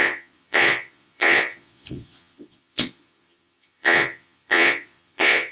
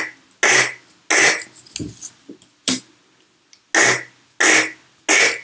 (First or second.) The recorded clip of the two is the second